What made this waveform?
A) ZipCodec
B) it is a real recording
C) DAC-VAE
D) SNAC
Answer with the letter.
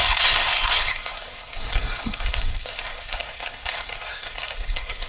D